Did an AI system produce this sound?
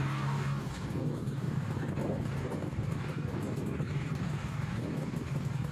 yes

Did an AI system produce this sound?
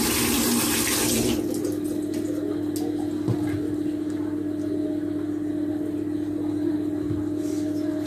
no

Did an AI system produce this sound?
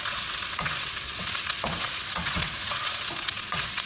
yes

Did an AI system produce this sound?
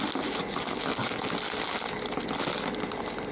no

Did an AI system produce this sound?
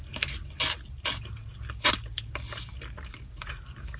no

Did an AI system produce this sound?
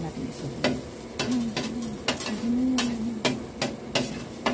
no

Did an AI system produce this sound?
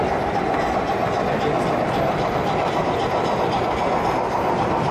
no